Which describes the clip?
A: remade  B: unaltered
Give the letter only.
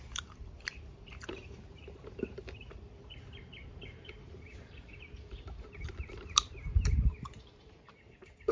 A